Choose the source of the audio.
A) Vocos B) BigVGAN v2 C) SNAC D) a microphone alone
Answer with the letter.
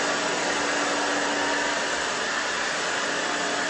D